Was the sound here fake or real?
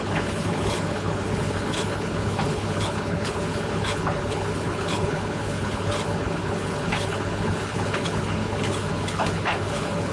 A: fake